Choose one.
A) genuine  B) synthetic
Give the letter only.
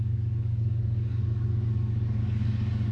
B